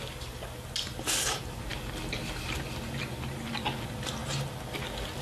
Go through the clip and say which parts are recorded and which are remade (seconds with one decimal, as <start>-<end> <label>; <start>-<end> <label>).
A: 0.0-5.2 recorded